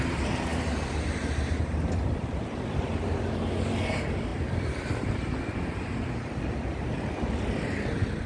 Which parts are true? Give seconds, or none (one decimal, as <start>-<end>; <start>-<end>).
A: 0.0-8.3